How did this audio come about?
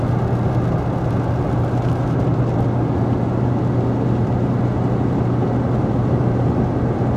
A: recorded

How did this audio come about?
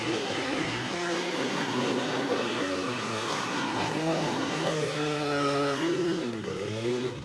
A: remade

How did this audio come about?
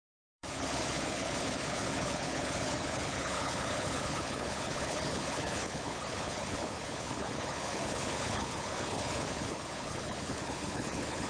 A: remade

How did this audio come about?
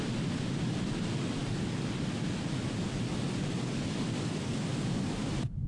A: recorded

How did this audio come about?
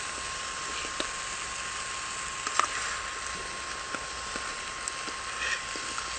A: recorded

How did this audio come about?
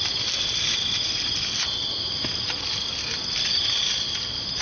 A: recorded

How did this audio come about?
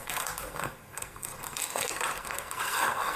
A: remade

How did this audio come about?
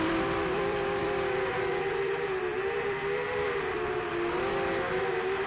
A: remade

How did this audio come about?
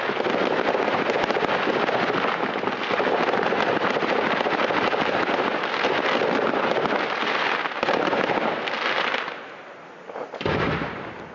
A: recorded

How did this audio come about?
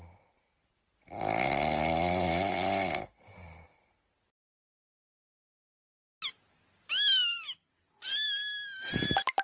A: recorded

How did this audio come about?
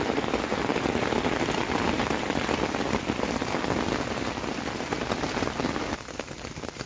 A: recorded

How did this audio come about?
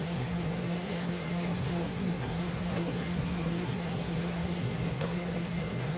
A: remade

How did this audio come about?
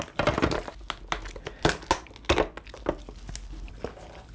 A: recorded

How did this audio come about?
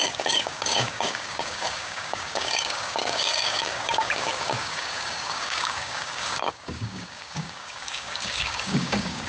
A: remade